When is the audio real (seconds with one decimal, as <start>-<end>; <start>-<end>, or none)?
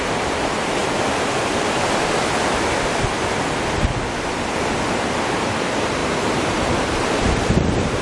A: 0.8-5.2